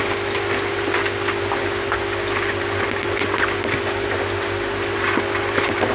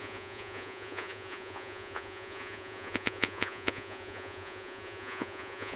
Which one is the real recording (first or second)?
first